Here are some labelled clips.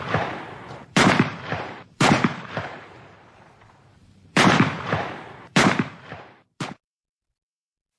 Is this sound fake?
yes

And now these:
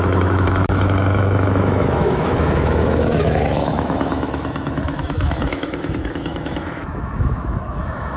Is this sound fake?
yes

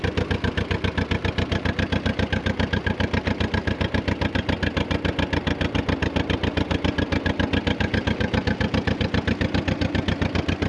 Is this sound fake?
no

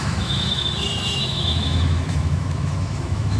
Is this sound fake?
yes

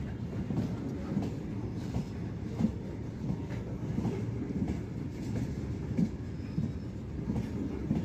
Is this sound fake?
no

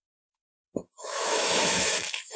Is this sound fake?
yes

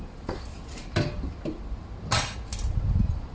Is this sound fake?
no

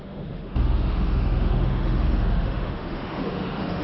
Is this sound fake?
yes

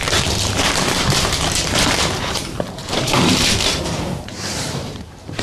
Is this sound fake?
yes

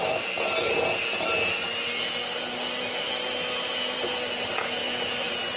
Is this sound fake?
no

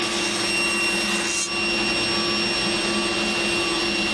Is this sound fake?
no